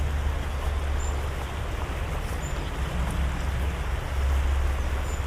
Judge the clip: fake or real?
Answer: real